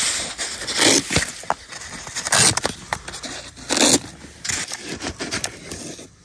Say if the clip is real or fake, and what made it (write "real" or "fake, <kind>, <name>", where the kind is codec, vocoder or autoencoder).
real